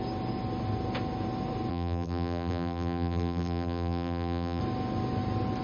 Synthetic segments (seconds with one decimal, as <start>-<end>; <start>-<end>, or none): 1.7-4.6